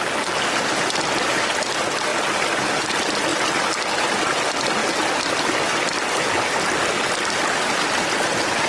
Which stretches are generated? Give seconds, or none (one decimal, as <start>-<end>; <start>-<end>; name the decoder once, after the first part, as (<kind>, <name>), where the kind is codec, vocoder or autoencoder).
none